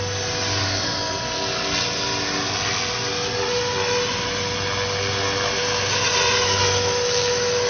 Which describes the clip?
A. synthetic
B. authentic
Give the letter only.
B